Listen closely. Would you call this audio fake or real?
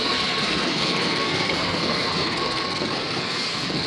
fake